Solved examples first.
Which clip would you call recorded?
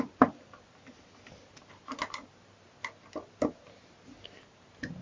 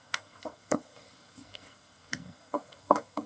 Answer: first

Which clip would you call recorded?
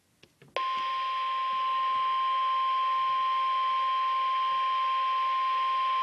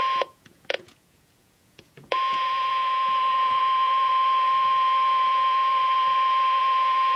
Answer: first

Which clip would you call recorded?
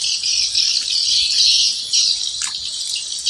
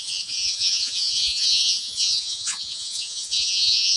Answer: first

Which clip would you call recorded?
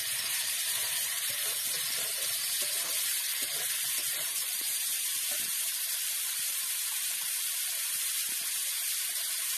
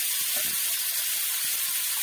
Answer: second